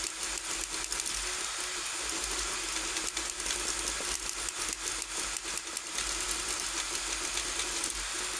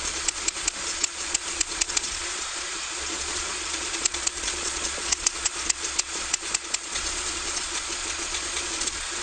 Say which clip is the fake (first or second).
second